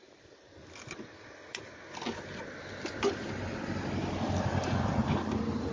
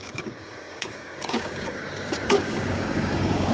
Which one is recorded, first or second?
first